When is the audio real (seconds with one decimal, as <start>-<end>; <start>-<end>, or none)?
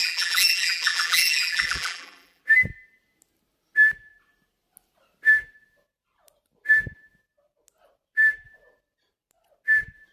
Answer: 2.4-10.1